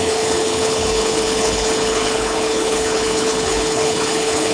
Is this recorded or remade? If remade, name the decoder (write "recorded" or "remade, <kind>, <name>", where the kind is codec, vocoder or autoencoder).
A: remade, codec, HILCodec